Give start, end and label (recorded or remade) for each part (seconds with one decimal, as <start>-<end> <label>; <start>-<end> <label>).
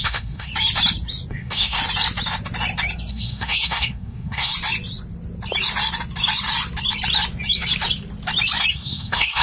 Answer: 0.0-0.5 remade; 0.5-1.3 recorded; 1.3-1.8 remade; 1.8-3.1 recorded; 3.1-4.5 remade; 4.5-8.7 recorded; 8.7-9.4 remade